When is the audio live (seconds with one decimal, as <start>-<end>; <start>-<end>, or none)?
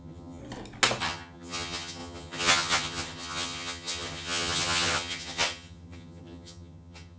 0.4-1.0